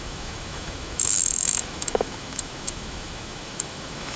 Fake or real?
fake